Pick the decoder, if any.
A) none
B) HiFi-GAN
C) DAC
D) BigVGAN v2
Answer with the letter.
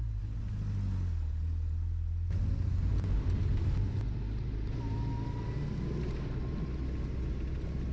A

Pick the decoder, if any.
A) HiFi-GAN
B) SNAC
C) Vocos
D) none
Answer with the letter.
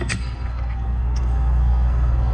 B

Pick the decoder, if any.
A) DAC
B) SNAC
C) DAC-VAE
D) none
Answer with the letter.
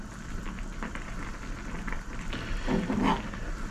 D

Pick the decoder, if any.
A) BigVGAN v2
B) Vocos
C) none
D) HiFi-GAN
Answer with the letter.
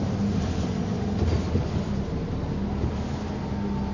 C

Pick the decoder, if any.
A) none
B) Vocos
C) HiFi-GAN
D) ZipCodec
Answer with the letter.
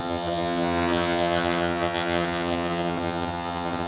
C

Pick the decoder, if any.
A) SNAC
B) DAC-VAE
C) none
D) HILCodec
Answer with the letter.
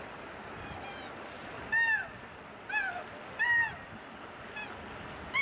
C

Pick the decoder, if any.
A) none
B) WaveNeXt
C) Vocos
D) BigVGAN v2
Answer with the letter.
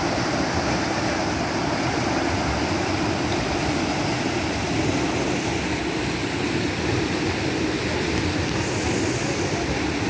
A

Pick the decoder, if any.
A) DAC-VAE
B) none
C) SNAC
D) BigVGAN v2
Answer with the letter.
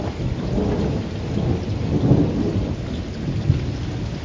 B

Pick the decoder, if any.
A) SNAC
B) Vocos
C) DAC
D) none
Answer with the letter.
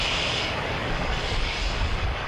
C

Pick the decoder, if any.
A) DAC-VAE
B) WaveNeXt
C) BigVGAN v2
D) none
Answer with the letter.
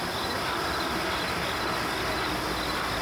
D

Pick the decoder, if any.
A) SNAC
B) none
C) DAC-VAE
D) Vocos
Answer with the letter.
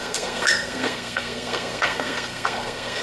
A